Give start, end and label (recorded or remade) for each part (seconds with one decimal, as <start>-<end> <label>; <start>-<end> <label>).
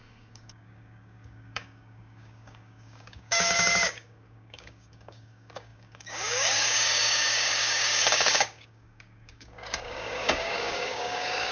0.0-11.5 remade